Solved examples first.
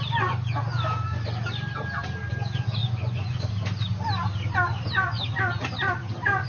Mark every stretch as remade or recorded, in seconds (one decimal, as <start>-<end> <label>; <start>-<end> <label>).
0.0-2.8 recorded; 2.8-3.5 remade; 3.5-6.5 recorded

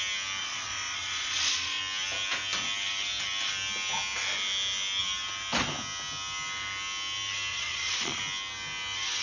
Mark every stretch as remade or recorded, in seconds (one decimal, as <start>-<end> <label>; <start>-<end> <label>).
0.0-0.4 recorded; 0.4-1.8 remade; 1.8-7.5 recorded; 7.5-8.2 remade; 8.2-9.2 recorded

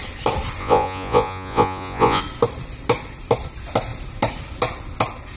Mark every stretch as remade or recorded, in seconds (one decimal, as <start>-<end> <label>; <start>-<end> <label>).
0.0-0.6 recorded; 0.6-2.2 remade; 2.2-5.4 recorded

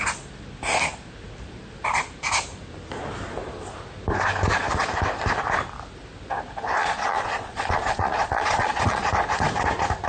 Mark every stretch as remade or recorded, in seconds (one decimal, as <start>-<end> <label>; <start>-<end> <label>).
0.0-6.8 recorded; 6.8-9.1 remade; 9.1-10.1 recorded

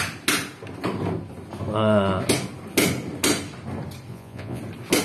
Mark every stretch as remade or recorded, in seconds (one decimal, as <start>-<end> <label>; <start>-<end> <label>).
0.0-4.1 recorded; 4.1-4.6 remade; 4.6-5.0 recorded

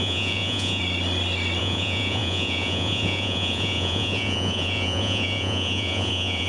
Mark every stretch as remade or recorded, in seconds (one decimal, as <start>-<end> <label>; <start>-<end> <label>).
0.0-0.8 remade; 0.8-1.6 recorded; 1.6-6.5 remade